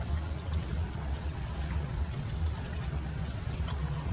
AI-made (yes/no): yes